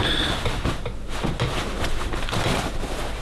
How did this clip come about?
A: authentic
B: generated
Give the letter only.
A